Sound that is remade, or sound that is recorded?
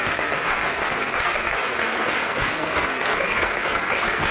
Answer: remade